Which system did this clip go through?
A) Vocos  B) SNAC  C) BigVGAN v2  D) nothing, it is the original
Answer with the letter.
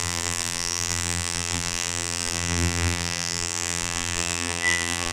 C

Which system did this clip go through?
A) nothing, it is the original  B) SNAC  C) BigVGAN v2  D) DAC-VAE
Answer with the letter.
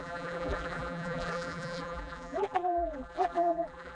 C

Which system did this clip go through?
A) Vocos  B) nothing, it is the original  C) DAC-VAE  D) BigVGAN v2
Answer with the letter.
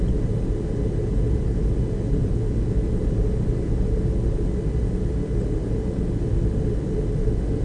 B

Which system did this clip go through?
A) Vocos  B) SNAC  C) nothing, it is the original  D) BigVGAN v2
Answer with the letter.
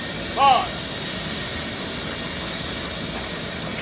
C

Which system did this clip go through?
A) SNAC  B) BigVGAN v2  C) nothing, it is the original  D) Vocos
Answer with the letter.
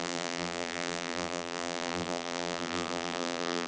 B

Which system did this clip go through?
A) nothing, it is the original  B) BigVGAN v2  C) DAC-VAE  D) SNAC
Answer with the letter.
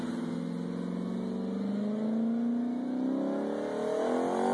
A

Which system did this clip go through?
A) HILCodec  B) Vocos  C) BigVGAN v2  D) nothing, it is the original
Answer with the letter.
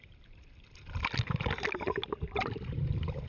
D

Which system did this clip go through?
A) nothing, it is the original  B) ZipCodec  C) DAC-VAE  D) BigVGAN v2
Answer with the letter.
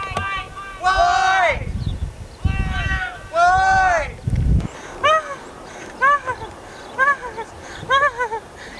A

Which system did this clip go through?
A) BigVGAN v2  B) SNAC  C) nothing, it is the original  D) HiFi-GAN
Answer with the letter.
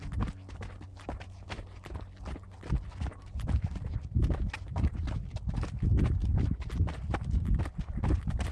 C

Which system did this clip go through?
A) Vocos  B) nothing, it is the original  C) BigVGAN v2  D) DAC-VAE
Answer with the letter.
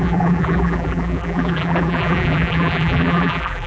C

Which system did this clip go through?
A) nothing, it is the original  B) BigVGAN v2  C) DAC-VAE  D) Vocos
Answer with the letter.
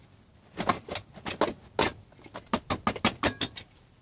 A